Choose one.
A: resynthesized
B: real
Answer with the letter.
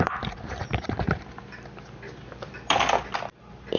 A